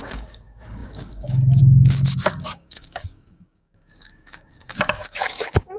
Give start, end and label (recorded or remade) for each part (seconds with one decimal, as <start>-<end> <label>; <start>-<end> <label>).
0.0-5.8 remade